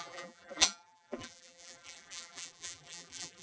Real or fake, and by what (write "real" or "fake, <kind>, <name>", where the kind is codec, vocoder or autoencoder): fake, vocoder, BigVGAN v2